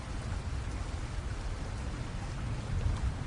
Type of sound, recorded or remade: recorded